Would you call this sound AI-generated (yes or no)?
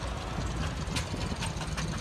no